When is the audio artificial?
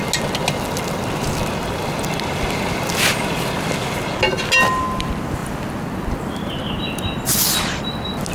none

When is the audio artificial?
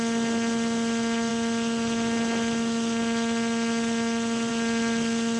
none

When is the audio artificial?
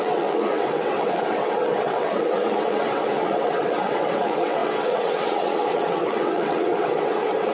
0.0-7.5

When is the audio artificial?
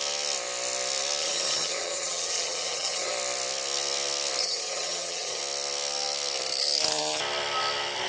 1.2-3.1; 4.4-5.4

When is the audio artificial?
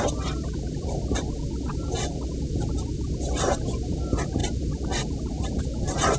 0.0-6.2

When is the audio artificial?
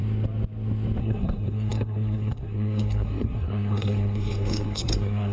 1.0-5.3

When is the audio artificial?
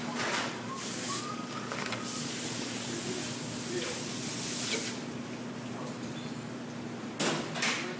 0.0-3.2